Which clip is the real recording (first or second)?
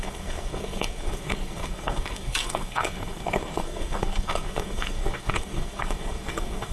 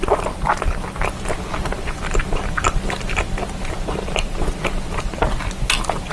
second